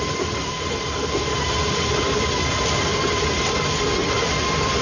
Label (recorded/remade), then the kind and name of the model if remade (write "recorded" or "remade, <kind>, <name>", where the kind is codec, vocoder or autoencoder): recorded